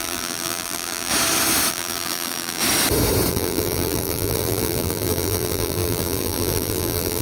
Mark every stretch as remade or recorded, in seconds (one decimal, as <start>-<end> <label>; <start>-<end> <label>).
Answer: 0.0-1.1 remade; 1.1-1.7 recorded; 1.7-2.6 remade; 2.6-3.3 recorded; 3.3-7.2 remade